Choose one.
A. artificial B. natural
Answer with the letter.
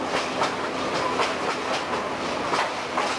A